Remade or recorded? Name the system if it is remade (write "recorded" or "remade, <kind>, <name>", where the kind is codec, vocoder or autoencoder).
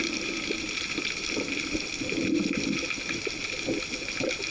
recorded